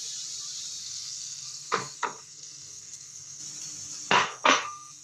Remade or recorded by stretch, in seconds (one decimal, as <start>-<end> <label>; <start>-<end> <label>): 0.0-0.8 recorded; 0.8-3.4 remade; 3.4-4.1 recorded; 4.1-5.0 remade